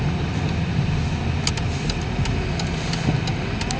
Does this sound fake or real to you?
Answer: real